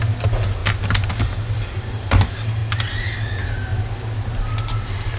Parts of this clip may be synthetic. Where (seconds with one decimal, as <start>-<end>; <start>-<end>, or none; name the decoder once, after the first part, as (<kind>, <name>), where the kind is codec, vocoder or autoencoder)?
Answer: none